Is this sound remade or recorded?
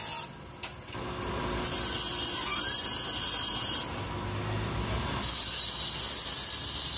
recorded